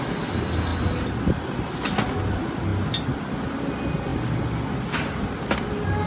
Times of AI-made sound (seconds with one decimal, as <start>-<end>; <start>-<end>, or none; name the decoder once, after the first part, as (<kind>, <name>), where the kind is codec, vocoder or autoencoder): none